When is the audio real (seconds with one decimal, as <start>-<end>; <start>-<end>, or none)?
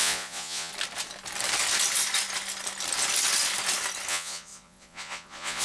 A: 0.7-4.1